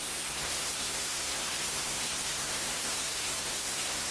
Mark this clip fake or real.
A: fake